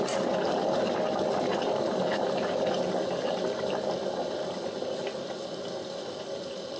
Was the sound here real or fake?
real